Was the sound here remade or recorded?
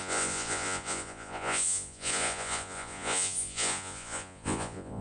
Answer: remade